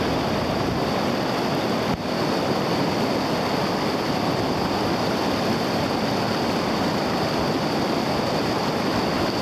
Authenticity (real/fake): real